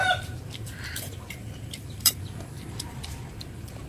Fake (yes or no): yes